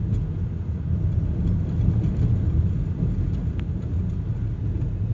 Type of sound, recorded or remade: recorded